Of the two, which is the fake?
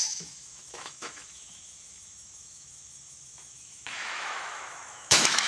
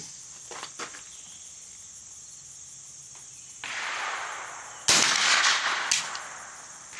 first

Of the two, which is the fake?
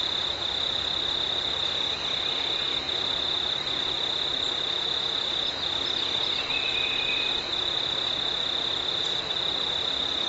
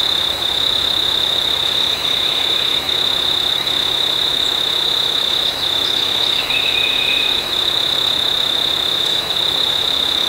second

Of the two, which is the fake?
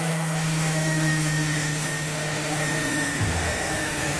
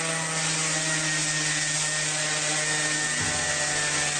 first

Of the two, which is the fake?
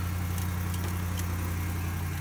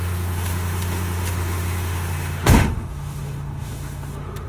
second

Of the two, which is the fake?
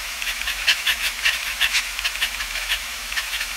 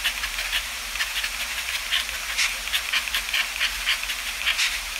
first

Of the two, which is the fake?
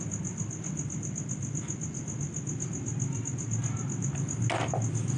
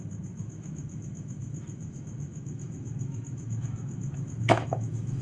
second